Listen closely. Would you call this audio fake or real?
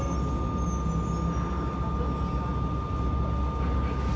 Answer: real